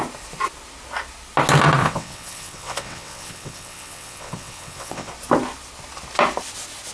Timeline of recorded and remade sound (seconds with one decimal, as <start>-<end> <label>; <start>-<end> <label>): 0.0-1.8 recorded; 1.8-5.1 remade; 5.1-6.9 recorded

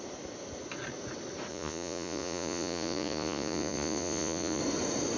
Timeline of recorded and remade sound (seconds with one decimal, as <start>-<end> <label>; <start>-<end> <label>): 0.0-1.5 recorded; 1.5-4.6 remade; 4.6-5.2 recorded

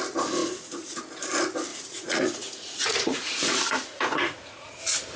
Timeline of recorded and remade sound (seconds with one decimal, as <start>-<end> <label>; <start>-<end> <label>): 0.0-0.4 recorded; 0.4-1.0 remade; 1.0-1.7 recorded; 1.7-4.8 remade; 4.8-5.2 recorded